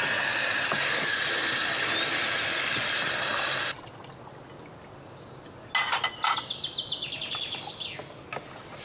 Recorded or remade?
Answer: recorded